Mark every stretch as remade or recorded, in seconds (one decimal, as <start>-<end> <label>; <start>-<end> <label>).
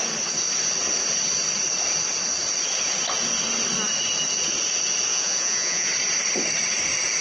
0.0-5.1 recorded; 5.1-5.9 remade; 5.9-7.2 recorded